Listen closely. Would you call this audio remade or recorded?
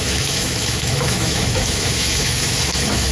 remade